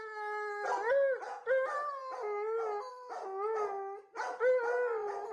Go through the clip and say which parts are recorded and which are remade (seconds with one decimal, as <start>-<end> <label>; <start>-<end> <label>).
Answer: 0.0-5.3 recorded

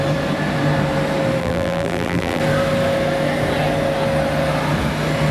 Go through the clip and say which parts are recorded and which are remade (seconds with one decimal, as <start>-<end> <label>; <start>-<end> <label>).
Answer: 0.0-1.4 recorded; 1.4-2.4 remade; 2.4-5.3 recorded

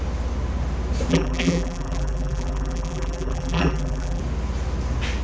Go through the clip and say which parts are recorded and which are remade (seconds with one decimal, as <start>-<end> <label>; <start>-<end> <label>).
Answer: 0.0-1.1 recorded; 1.1-4.2 remade; 4.2-5.2 recorded

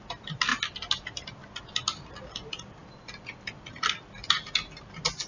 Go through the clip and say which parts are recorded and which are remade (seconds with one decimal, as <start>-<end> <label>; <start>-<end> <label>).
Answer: 0.0-5.3 recorded

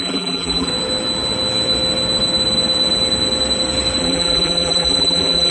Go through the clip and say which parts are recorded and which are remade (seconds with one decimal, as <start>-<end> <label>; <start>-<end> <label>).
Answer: 0.0-0.7 remade; 0.7-4.0 recorded; 4.0-5.5 remade